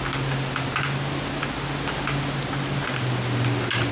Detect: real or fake real